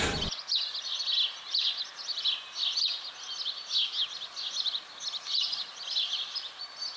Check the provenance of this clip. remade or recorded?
recorded